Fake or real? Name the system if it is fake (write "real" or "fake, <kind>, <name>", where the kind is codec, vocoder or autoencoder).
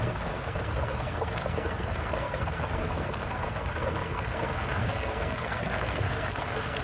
fake, codec, SNAC